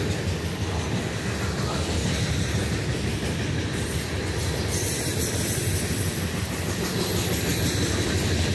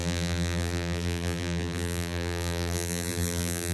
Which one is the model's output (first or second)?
second